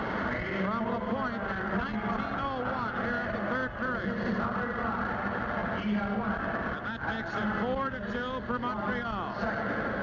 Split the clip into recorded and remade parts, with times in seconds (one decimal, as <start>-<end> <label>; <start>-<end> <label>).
0.0-10.0 recorded